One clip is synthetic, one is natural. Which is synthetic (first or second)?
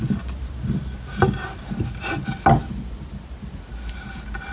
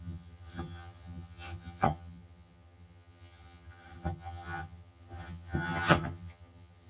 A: second